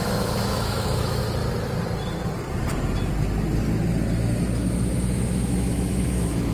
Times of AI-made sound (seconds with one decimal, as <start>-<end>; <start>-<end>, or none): 0.0-1.2; 5.1-6.5